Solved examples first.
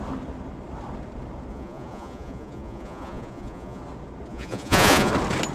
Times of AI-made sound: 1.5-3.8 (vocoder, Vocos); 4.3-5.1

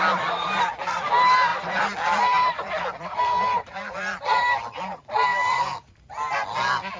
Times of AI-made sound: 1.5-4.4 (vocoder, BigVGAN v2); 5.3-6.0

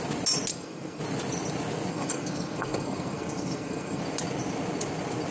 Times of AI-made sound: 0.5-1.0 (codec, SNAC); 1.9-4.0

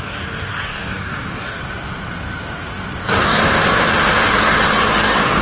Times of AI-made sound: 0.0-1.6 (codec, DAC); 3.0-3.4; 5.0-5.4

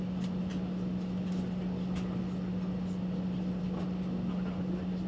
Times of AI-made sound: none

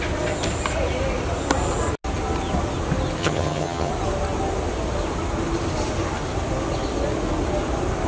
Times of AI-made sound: 3.2-3.9 (vocoder, HiFi-GAN)

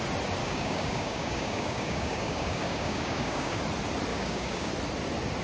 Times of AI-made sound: 0.4-3.6 (codec, DAC); 4.1-4.7

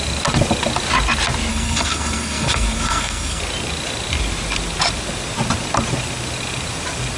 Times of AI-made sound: 1.5-3.4 (codec, SNAC)